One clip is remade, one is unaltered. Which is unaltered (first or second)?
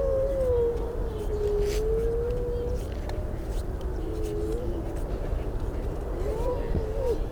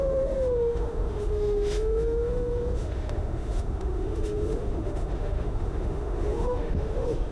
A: first